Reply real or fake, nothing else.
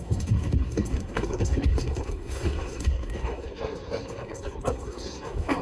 fake